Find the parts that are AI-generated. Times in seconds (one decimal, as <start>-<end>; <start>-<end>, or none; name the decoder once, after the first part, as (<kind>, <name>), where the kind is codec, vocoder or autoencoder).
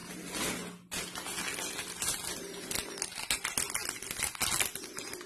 none